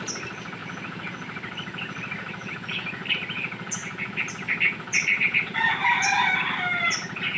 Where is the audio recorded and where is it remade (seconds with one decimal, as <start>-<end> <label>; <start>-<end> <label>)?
0.0-3.8 recorded; 3.8-6.3 remade; 6.3-7.4 recorded